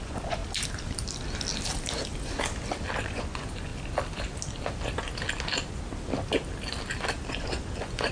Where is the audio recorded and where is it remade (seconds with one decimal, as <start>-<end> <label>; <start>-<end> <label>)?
0.0-0.4 remade; 0.4-3.0 recorded; 3.0-3.7 remade; 3.7-7.3 recorded; 7.3-8.1 remade